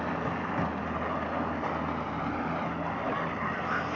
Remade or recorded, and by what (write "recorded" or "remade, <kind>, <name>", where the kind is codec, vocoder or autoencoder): recorded